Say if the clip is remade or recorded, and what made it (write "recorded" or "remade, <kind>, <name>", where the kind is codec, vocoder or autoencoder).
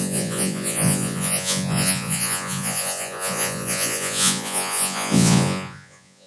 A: remade, vocoder, Vocos